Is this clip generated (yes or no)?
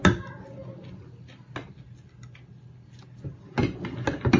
no